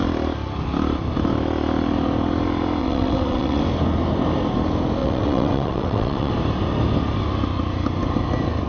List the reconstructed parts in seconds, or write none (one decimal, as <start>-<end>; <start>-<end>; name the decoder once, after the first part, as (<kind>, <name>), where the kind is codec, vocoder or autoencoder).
2.8-3.6 (vocoder, WaveNeXt); 5.0-6.3